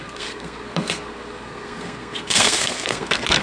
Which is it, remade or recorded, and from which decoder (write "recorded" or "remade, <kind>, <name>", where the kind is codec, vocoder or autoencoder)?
remade, codec, SNAC